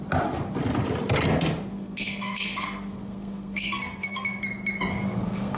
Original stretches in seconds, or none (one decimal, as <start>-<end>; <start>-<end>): 0.0-1.7; 4.4-4.9